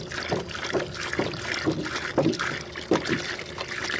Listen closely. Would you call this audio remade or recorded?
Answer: recorded